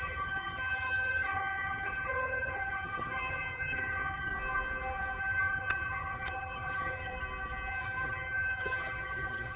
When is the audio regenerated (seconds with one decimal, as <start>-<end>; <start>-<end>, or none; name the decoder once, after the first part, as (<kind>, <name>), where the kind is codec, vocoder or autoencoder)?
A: 0.0-4.3 (vocoder, HiFi-GAN); 5.2-7.1; 7.7-9.6